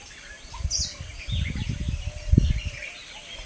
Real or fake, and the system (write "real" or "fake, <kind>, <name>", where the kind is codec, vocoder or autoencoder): real